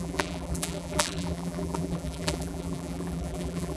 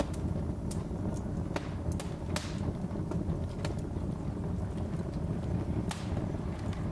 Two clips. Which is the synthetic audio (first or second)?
first